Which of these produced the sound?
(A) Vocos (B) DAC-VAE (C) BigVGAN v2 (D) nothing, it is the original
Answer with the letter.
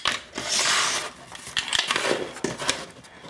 D